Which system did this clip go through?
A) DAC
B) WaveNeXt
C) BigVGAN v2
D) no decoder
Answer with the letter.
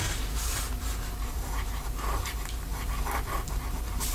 C